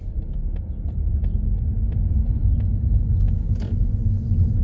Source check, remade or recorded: recorded